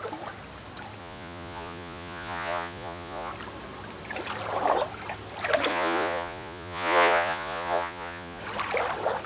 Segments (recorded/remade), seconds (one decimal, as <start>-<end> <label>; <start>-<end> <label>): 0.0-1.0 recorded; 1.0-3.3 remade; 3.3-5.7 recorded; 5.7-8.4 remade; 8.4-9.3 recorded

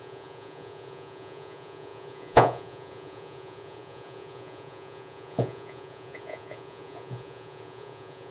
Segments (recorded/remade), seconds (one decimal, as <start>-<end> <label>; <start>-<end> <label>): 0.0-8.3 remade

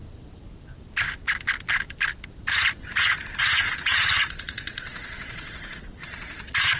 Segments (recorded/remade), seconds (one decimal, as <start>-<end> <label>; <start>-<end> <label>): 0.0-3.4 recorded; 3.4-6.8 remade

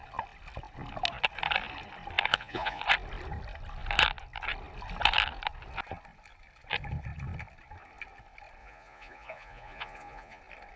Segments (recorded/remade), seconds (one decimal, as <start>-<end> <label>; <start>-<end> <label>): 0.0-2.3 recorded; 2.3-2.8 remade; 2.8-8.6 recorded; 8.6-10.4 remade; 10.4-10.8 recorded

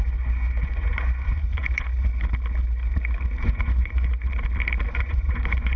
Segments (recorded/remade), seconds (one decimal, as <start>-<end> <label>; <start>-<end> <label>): 0.0-2.1 remade; 2.1-3.4 recorded; 3.4-4.1 remade; 4.1-4.9 recorded; 4.9-5.8 remade

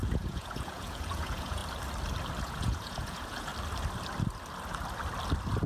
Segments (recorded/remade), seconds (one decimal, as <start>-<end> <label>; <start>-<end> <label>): 0.0-1.6 remade; 1.6-2.4 recorded; 2.4-3.5 remade; 3.5-5.7 recorded

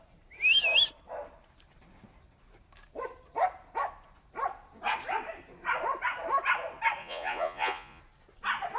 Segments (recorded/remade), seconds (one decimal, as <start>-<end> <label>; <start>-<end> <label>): 0.0-7.0 recorded; 7.0-8.0 remade; 8.0-8.8 recorded